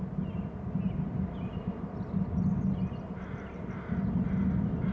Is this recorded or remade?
recorded